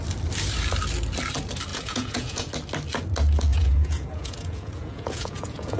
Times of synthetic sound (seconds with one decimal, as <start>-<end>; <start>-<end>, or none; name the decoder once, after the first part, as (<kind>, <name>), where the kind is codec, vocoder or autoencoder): 1.7-2.5 (vocoder, Vocos); 3.5-5.8